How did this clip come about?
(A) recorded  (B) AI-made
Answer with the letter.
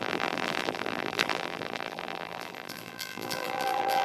B